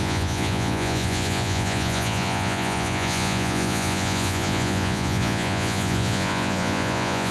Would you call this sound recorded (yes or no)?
no